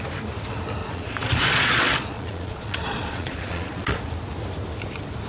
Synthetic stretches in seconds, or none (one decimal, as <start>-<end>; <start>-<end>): 0.8-4.0